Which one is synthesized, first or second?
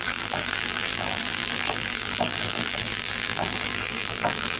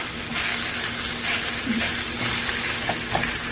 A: first